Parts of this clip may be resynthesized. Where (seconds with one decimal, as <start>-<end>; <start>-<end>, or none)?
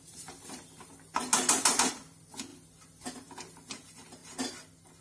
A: none